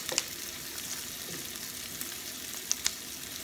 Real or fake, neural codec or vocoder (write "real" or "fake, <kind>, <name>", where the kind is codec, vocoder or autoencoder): real